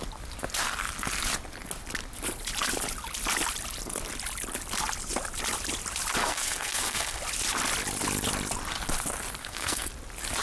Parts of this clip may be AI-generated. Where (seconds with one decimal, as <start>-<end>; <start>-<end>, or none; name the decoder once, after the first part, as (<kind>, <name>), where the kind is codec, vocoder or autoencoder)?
6.2-7.2 (codec, SNAC); 9.4-9.9